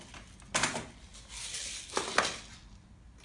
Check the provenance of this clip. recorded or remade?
recorded